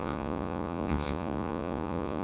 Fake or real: fake